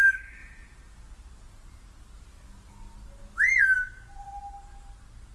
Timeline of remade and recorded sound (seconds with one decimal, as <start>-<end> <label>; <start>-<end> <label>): 0.0-5.3 recorded